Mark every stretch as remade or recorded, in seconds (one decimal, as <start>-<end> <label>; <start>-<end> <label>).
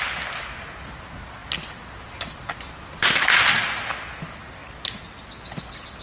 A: 0.0-6.0 recorded